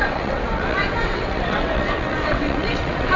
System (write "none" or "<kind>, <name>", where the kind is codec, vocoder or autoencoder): vocoder, WaveNeXt